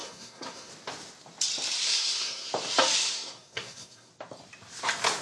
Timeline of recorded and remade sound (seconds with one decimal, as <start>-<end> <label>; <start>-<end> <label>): 0.0-0.7 remade; 0.7-1.8 recorded; 1.8-2.5 remade; 2.5-3.0 recorded; 3.0-4.1 remade; 4.1-5.2 recorded